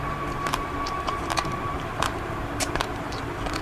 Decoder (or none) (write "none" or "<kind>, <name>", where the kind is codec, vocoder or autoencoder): vocoder, BigVGAN v2